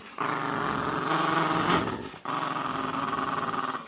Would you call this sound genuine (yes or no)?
yes